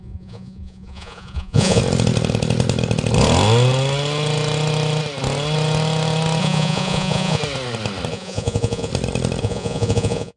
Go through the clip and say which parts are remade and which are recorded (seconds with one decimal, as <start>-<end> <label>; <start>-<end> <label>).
0.0-1.8 remade; 1.8-6.4 recorded; 6.4-7.4 remade; 7.4-8.1 recorded; 8.1-8.9 remade; 8.9-9.4 recorded; 9.4-10.4 remade